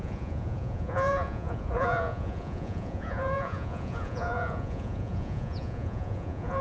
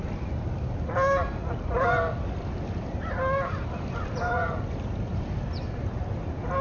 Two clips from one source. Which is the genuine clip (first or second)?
second